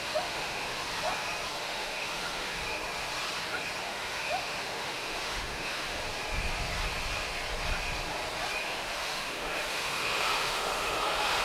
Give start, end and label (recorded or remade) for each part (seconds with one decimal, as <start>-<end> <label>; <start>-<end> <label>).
0.0-0.8 remade; 0.8-1.5 recorded; 1.5-2.6 remade; 2.6-3.8 recorded; 3.8-6.0 remade; 6.0-8.6 recorded; 8.6-11.4 remade